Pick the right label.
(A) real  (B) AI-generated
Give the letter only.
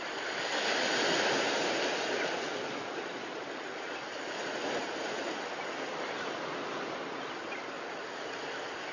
A